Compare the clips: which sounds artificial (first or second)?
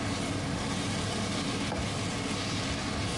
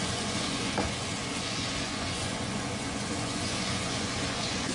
second